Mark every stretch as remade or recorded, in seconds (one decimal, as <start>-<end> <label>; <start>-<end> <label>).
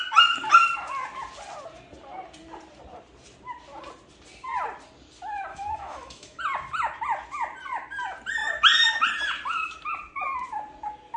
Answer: 0.0-5.5 recorded; 5.5-6.4 remade; 6.4-11.2 recorded